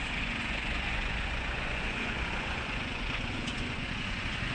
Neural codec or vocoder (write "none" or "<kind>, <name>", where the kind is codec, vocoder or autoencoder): vocoder, Vocos